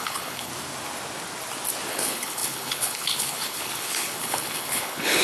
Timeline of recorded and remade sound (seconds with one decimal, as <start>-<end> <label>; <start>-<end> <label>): 0.0-0.5 remade; 0.5-1.9 recorded; 1.9-5.2 remade